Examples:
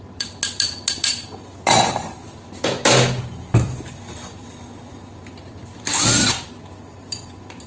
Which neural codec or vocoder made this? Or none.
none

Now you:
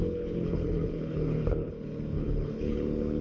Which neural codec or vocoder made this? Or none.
codec, HILCodec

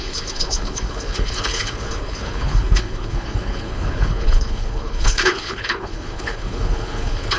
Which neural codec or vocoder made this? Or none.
codec, HILCodec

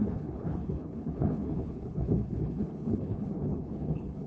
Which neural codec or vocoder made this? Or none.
codec, HILCodec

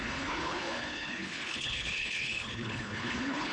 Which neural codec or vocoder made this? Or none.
codec, HILCodec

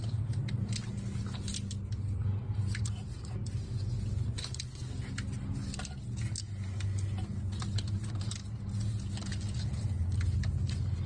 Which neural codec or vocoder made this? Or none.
none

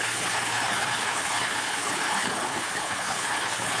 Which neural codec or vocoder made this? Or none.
codec, HILCodec